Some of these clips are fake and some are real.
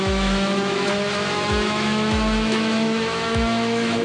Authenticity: fake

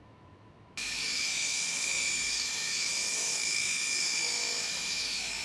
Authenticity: fake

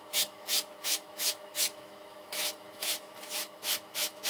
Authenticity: fake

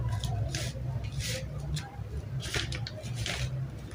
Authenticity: real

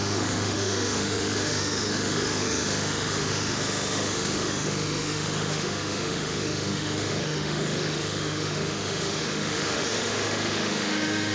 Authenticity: fake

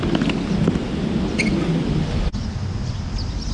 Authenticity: real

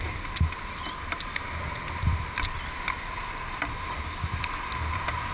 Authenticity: real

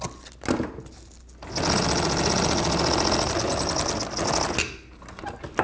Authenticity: real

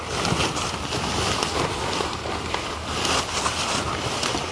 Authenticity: real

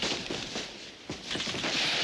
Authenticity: real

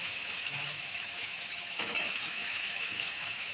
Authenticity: fake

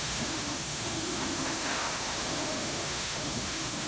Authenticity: fake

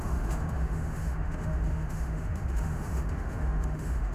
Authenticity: fake